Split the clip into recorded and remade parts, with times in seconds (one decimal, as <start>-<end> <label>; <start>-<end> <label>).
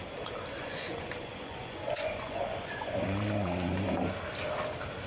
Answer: 0.0-0.6 recorded; 0.6-3.7 remade; 3.7-5.1 recorded